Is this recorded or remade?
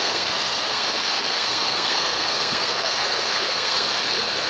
remade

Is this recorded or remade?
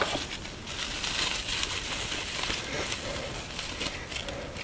recorded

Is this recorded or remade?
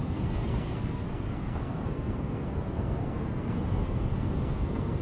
remade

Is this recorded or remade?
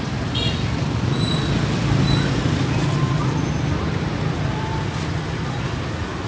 recorded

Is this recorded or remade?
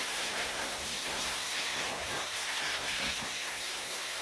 remade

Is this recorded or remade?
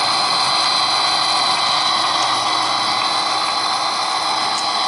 recorded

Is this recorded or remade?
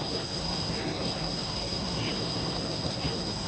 remade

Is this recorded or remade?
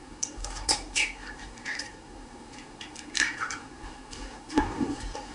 remade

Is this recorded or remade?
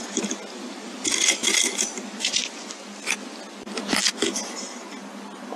recorded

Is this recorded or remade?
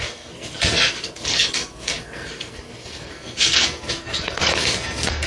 remade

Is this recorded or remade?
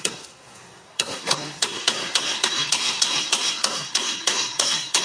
remade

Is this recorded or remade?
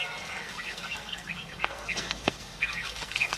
remade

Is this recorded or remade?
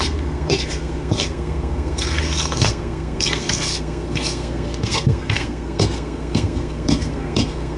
remade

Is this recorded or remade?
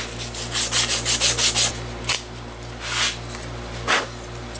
recorded